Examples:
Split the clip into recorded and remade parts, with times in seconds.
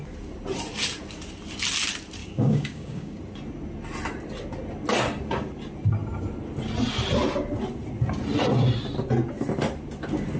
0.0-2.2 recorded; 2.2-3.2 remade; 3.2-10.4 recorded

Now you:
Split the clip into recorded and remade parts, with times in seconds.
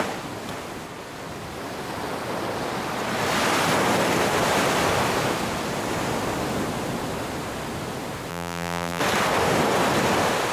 0.0-8.3 recorded; 8.3-9.0 remade; 9.0-10.5 recorded